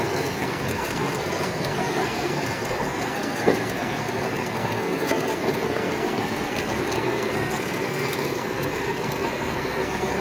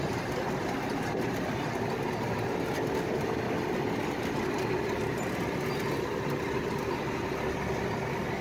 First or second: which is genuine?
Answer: second